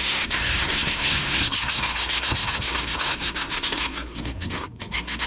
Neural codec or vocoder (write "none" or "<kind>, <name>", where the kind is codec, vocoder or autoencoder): codec, SNAC